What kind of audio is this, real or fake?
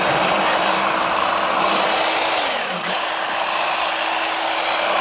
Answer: real